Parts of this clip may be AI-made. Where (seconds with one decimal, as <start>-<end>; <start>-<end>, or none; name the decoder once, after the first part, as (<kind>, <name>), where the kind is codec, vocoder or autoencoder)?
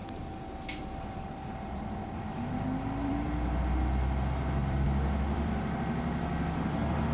0.0-3.6 (vocoder, BigVGAN v2); 4.6-5.8